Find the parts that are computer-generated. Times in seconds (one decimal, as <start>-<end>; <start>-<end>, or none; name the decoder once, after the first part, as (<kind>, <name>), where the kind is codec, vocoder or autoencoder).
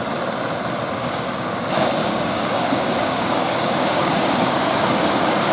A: 1.0-1.6 (codec, DAC); 2.0-5.5